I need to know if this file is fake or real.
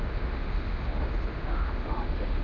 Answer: fake